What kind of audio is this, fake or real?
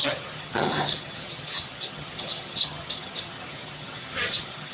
fake